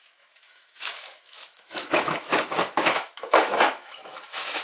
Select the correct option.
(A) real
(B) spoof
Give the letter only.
B